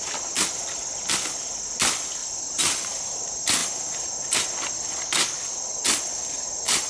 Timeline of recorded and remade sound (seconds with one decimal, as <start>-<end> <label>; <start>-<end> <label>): 0.0-2.2 recorded; 2.2-3.0 remade; 3.0-6.9 recorded